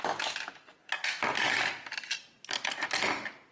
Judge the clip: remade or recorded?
recorded